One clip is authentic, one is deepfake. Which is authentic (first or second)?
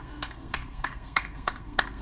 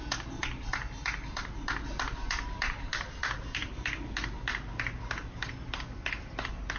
second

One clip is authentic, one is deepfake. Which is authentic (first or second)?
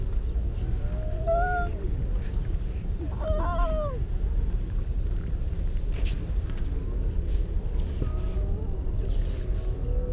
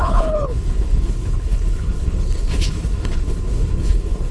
first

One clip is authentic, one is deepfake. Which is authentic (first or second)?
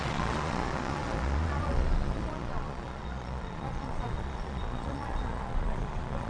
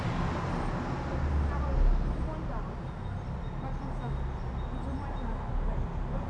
second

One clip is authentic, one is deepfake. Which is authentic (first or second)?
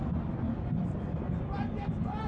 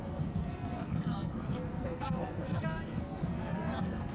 first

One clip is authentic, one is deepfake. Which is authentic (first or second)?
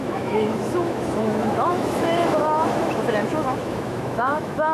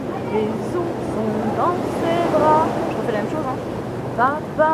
second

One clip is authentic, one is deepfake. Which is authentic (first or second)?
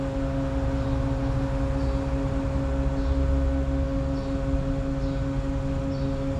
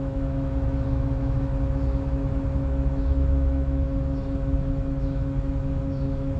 first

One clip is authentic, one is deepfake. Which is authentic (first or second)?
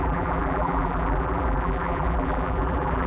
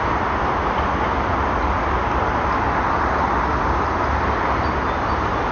second